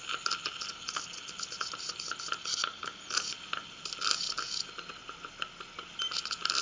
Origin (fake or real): real